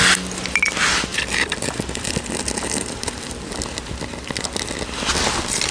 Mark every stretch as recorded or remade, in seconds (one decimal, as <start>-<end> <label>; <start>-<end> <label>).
0.0-1.1 recorded; 1.1-3.6 remade; 3.6-5.7 recorded